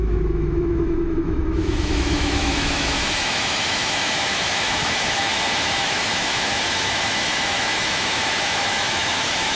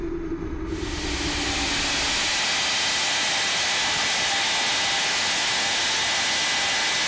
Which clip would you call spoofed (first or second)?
first